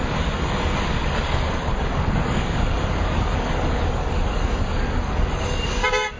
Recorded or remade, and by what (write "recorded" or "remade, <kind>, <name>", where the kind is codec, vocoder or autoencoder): remade, codec, DAC